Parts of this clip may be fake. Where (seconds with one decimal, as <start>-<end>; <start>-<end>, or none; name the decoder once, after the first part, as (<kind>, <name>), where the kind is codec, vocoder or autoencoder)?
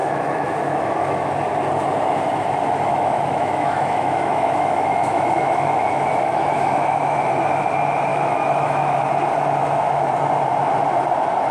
0.0-1.3 (autoencoder, DAC-VAE); 2.9-7.3; 8.1-9.1